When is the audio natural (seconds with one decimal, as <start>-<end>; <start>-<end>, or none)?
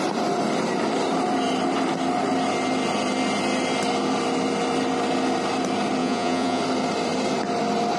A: 0.0-6.0; 6.6-8.0